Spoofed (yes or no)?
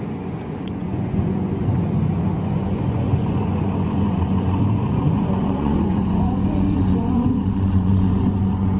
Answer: yes